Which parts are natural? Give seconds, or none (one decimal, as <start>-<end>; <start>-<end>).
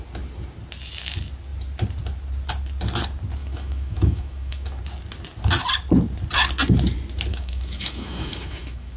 0.0-3.4; 4.8-7.3